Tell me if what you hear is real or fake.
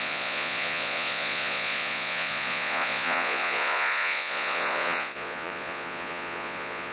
fake